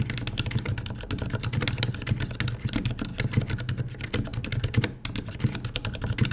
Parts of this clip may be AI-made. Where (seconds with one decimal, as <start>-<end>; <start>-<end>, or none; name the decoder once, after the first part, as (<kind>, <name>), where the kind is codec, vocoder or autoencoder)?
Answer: none